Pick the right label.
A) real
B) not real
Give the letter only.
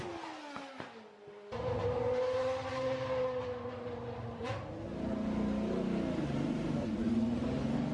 A